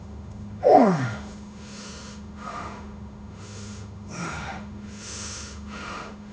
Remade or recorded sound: remade